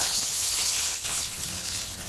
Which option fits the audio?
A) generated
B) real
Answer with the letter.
A